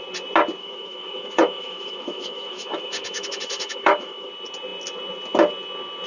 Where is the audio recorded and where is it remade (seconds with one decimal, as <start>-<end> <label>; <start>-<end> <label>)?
0.0-0.6 recorded; 0.6-4.3 remade; 4.3-6.1 recorded